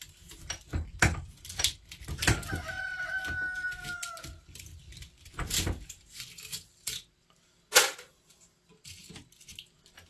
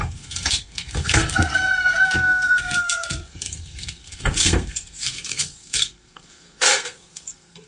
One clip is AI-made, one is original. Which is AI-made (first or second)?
second